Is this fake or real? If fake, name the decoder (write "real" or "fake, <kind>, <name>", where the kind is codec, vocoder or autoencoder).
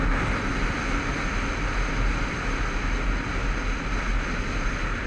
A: real